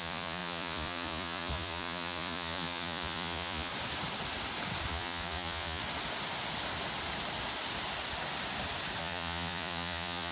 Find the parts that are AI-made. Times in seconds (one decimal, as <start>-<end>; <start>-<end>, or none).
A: 0.0-3.7; 4.9-5.8; 9.0-10.3